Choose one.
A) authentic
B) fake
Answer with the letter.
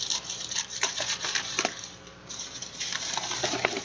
B